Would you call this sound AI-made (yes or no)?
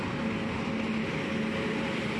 no